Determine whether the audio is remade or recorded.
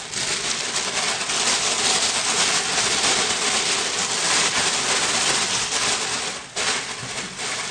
recorded